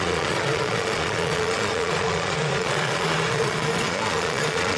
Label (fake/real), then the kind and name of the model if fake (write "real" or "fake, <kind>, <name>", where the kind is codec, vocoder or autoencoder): fake, vocoder, Vocos